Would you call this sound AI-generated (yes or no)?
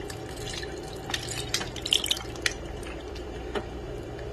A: yes